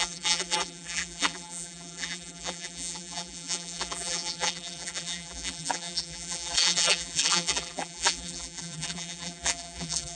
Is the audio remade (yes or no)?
yes